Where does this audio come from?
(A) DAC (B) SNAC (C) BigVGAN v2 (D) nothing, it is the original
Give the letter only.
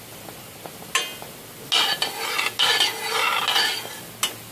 D